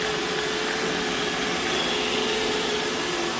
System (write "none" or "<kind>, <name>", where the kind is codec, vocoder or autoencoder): none